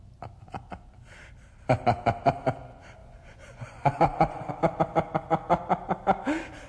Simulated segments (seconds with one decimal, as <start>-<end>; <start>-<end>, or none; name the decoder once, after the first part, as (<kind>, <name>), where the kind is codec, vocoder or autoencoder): 3.0-4.5 (vocoder, Vocos)